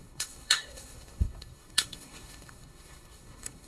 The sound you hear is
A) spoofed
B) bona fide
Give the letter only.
A